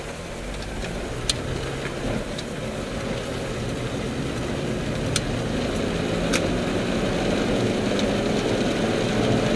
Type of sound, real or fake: real